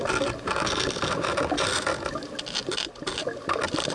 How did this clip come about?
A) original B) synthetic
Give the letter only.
A